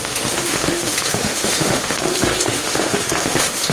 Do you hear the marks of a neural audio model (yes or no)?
yes